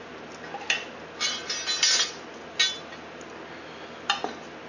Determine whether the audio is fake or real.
real